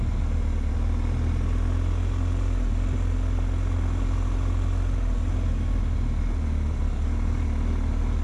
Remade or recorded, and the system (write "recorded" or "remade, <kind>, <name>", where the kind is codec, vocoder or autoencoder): recorded